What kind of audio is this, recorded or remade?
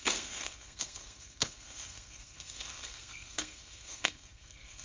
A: remade